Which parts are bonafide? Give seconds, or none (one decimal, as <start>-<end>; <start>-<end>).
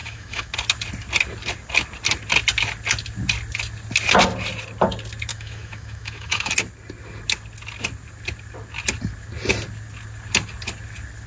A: 0.5-5.3; 6.5-11.3